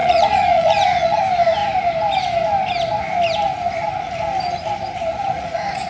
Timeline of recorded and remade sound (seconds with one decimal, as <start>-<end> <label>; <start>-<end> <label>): 0.0-1.2 remade; 1.2-5.1 recorded; 5.1-5.9 remade